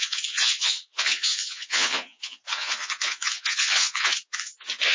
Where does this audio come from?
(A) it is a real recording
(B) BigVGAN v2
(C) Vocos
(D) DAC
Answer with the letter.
C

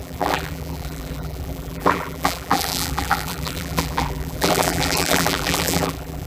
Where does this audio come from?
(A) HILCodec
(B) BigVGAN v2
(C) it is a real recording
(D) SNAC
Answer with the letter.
B